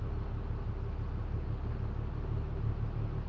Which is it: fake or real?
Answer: real